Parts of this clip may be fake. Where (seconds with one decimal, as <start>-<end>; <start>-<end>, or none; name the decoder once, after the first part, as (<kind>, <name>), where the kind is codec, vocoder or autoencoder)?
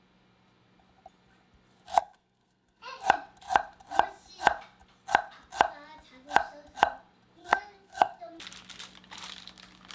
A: 2.0-2.8 (codec, SNAC); 7.4-8.2